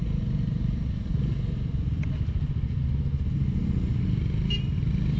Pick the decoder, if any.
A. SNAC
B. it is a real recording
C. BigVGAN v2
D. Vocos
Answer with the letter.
B